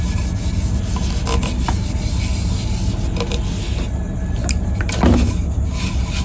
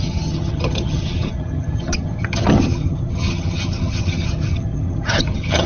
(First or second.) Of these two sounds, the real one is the first